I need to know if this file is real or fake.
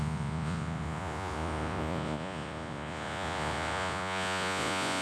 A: fake